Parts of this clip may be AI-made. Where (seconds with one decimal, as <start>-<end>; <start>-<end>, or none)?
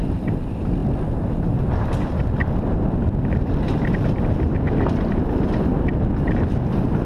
none